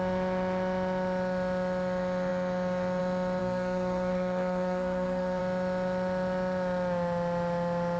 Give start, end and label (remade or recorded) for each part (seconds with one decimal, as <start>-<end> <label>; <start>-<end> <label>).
0.0-3.4 recorded; 3.4-5.4 remade; 5.4-8.0 recorded